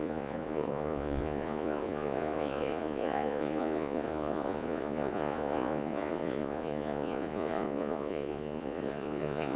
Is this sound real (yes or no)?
no